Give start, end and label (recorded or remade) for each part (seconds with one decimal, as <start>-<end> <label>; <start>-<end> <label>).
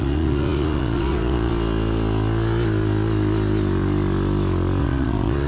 0.0-1.5 remade; 1.5-4.8 recorded; 4.8-5.5 remade